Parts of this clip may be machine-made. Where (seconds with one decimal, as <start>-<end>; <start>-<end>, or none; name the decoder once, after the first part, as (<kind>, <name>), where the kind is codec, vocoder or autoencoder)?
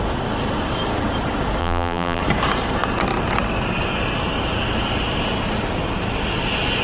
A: 1.6-2.2 (vocoder, BigVGAN v2)